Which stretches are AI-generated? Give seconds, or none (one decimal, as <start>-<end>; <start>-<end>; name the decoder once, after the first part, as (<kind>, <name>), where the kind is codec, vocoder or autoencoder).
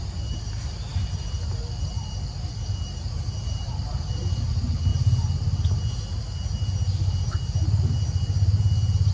0.0-4.9 (vocoder, BigVGAN v2)